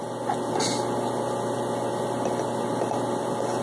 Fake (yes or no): no